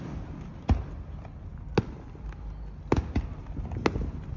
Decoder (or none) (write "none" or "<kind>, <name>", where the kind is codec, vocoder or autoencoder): none